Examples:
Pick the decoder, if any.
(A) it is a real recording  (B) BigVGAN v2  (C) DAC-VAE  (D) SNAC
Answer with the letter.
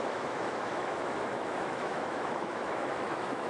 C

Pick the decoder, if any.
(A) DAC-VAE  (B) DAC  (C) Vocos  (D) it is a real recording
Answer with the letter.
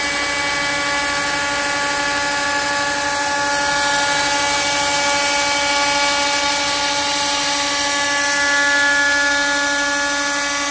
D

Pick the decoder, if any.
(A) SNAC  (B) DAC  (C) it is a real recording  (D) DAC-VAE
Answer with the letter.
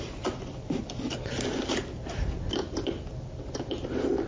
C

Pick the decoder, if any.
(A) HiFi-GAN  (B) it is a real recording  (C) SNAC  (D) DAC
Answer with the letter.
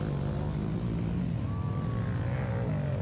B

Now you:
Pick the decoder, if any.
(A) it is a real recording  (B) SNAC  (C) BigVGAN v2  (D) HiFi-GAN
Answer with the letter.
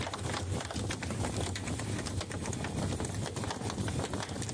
A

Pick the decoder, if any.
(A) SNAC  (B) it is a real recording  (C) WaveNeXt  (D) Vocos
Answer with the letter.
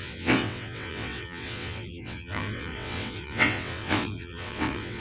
C